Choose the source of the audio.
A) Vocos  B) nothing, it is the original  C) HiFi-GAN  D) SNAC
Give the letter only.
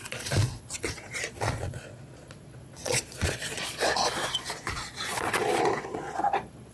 A